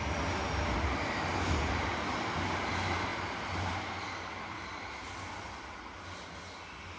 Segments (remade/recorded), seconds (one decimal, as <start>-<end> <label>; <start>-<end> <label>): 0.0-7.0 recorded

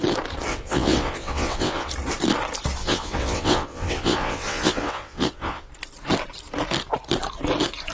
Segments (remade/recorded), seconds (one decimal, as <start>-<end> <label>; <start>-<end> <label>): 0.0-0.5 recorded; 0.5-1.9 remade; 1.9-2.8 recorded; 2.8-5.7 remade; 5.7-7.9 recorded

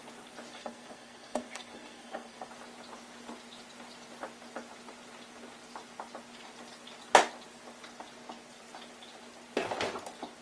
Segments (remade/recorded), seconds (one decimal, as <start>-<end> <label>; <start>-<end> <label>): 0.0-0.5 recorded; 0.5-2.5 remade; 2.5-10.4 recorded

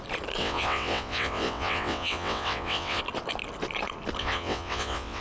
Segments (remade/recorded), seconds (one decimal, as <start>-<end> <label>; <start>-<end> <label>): 0.0-0.4 recorded; 0.4-3.0 remade; 3.0-4.2 recorded; 4.2-5.2 remade

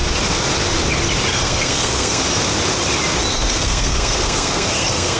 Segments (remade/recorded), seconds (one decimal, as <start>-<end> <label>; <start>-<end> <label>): 0.0-1.3 recorded; 1.3-2.2 remade; 2.2-3.3 recorded; 3.3-5.2 remade

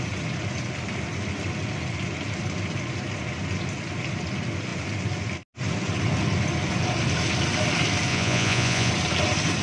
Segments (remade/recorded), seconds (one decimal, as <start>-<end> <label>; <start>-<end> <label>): 0.0-8.1 recorded; 8.1-8.9 remade; 8.9-9.6 recorded

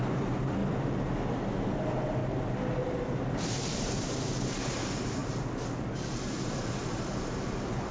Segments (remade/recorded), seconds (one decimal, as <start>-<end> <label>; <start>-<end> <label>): 0.0-0.6 remade; 0.6-1.5 recorded; 1.5-2.2 remade; 2.2-2.8 recorded; 2.8-5.2 remade; 5.2-6.3 recorded; 6.3-7.9 remade